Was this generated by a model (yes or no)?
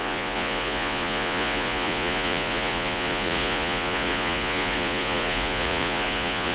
yes